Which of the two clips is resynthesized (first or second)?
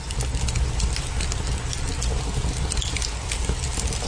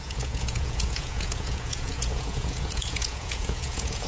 second